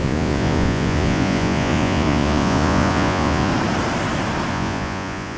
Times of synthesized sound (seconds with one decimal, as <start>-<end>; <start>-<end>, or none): 0.0-3.5; 4.5-5.4